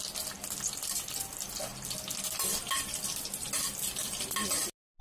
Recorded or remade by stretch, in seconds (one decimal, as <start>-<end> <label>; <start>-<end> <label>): 0.0-5.0 recorded